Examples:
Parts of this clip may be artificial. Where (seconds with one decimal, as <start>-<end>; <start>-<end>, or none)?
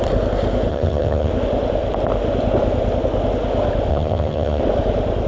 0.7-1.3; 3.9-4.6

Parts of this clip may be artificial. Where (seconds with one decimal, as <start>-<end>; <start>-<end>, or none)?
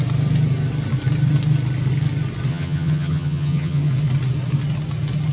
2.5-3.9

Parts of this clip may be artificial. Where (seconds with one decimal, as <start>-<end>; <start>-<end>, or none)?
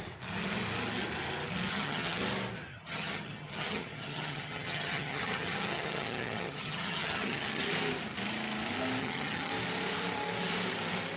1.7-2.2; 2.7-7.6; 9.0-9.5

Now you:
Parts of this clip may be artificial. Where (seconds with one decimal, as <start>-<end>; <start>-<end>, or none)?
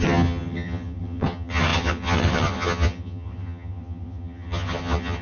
0.0-5.2